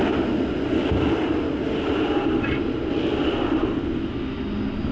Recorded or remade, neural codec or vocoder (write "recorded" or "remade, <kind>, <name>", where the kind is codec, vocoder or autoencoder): recorded